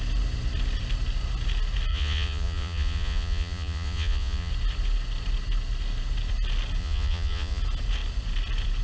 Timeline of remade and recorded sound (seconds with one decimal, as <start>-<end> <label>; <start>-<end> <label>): 0.0-1.9 recorded; 1.9-4.5 remade; 4.5-6.8 recorded; 6.8-7.6 remade; 7.6-8.8 recorded

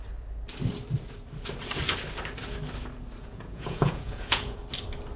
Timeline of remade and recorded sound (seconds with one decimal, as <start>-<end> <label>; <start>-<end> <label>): 0.0-3.2 recorded; 3.2-4.6 remade; 4.6-5.2 recorded